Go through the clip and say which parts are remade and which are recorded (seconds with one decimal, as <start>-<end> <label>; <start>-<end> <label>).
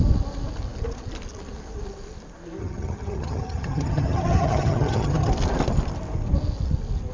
0.0-2.6 recorded; 2.6-5.3 remade; 5.3-7.1 recorded